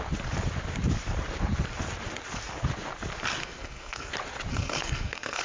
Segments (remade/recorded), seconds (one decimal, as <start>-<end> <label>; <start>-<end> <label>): 0.0-3.4 recorded; 3.4-4.1 remade; 4.1-4.5 recorded; 4.5-5.4 remade

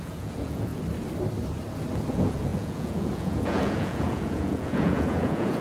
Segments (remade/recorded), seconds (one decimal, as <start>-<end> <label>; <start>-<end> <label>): 0.0-0.7 remade; 0.7-2.1 recorded; 2.1-5.6 remade

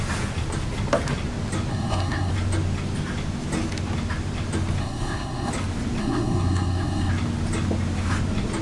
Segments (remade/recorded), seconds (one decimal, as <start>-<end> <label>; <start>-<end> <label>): 0.0-1.7 recorded; 1.7-2.3 remade; 2.3-4.8 recorded; 4.8-5.5 remade; 5.5-6.0 recorded; 6.0-7.1 remade; 7.1-8.6 recorded

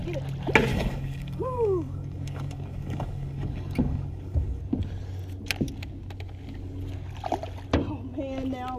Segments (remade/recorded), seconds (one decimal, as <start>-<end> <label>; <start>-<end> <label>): 0.0-0.7 recorded; 0.7-4.6 remade; 4.6-8.8 recorded